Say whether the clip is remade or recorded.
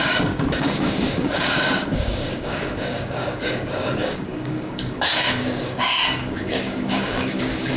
remade